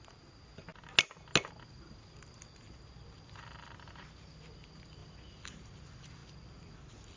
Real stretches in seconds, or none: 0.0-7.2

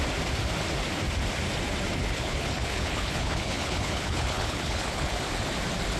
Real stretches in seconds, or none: 0.0-2.0; 5.1-6.0

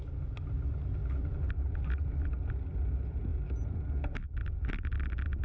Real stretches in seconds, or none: 0.0-5.4